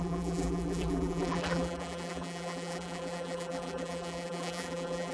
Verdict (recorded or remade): remade